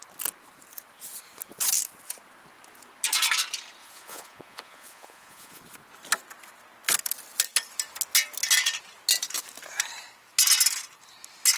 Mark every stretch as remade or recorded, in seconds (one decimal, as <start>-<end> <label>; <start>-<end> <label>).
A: 0.0-3.8 recorded; 3.8-5.6 remade; 5.6-11.6 recorded